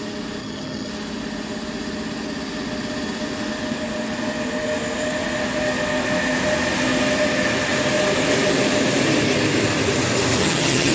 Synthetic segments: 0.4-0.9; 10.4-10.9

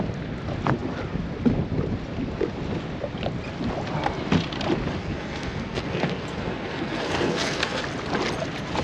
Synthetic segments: 5.0-7.8